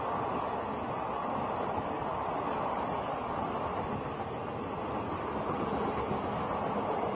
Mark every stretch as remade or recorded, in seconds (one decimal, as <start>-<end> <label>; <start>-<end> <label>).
0.0-7.1 recorded